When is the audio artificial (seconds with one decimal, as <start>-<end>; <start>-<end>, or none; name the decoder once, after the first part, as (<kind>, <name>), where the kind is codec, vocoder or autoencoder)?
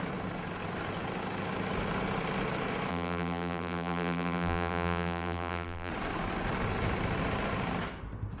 2.9-5.9 (vocoder, BigVGAN v2)